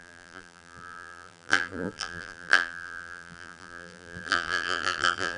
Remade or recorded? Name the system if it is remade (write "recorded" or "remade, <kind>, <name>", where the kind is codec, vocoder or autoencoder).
remade, vocoder, BigVGAN v2